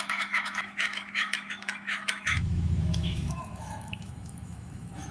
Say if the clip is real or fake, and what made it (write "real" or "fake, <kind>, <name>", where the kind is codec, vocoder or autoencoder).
fake, autoencoder, DAC-VAE